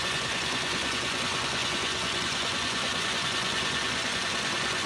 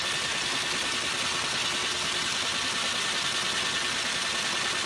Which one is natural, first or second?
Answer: second